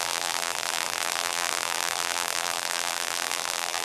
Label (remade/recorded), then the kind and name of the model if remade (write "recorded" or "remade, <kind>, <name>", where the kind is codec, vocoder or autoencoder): remade, vocoder, BigVGAN v2